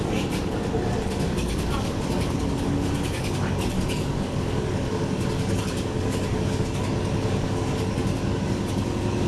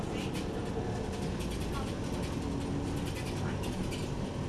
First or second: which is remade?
first